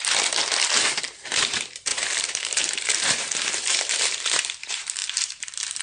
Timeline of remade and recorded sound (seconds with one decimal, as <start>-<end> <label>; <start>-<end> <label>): 0.0-1.1 recorded; 1.1-5.8 remade